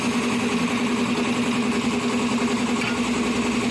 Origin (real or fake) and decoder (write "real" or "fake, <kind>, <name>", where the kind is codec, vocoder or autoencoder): real